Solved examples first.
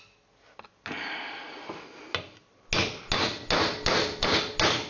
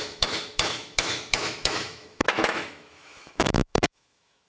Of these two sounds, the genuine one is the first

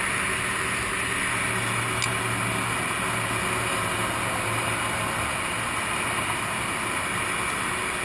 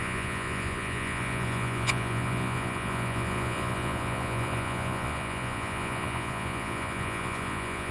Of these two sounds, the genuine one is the first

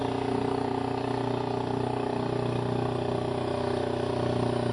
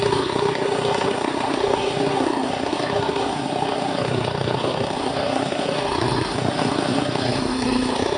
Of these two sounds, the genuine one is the first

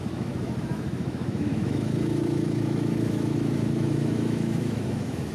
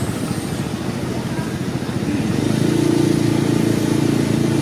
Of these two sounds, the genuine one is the second